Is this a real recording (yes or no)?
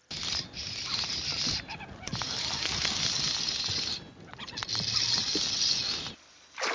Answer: yes